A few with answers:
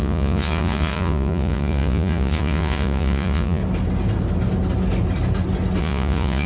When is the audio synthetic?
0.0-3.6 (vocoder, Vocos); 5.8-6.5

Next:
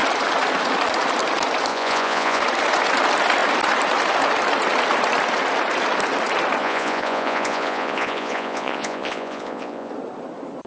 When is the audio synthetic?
1.7-2.4 (vocoder, Vocos); 6.6-9.9

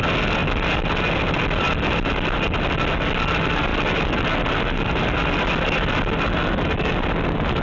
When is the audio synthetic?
none

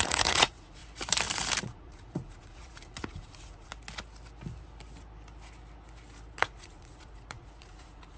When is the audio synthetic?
0.0-0.8 (vocoder, Vocos); 1.6-3.7; 6.4-8.2

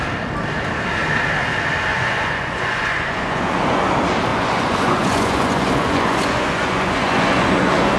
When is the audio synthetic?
1.9-3.8 (vocoder, Vocos); 4.3-8.0

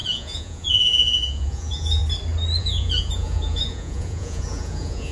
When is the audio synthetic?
0.0-2.0 (vocoder, Vocos); 2.6-5.1

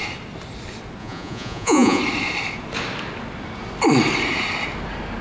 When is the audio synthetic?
1.0-2.0 (vocoder, Vocos)

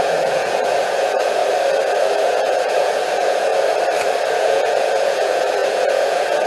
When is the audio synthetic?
0.0-1.4 (vocoder, Vocos); 2.1-3.5; 4.3-6.5